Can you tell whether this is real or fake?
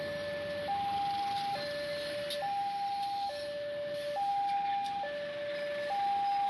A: real